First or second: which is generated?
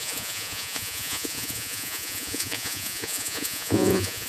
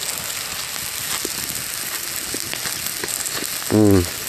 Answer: first